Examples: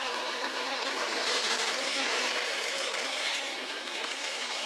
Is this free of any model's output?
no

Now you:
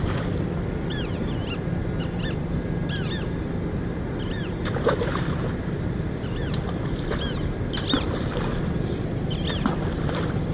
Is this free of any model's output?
no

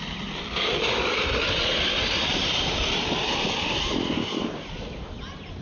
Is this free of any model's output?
yes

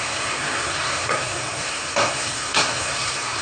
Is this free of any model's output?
no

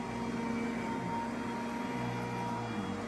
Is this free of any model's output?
yes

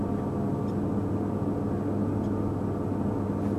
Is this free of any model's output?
yes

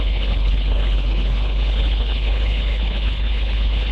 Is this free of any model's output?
no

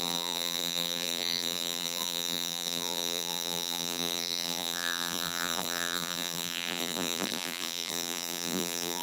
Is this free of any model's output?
no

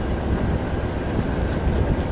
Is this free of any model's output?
yes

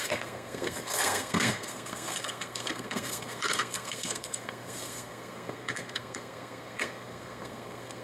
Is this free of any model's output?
no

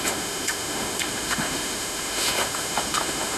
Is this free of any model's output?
no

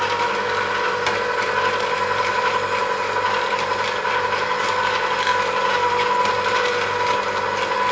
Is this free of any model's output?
yes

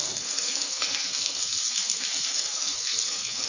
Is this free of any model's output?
no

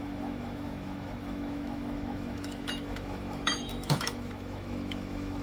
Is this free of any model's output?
no